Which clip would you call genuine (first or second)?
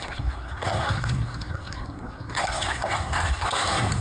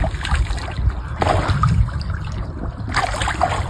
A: second